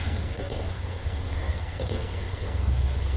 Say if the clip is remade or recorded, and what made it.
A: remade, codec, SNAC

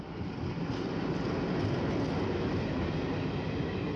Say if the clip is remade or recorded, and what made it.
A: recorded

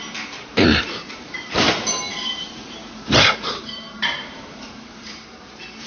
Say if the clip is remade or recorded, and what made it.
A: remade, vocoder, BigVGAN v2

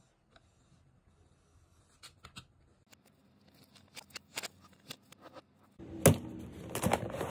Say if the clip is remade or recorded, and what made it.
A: recorded